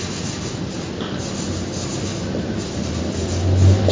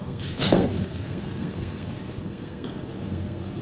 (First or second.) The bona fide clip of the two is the first